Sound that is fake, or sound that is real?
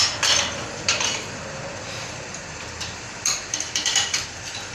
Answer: fake